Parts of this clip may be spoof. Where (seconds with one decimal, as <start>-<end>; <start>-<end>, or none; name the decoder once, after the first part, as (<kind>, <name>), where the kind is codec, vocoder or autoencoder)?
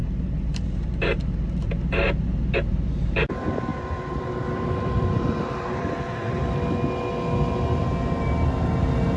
3.7-6.4 (vocoder, BigVGAN v2)